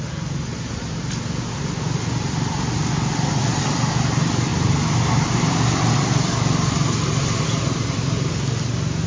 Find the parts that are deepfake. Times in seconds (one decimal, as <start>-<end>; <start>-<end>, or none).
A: none